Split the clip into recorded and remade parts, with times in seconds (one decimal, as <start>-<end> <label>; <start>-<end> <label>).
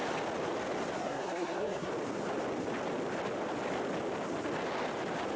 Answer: 0.0-1.0 recorded; 1.0-1.9 remade; 1.9-5.4 recorded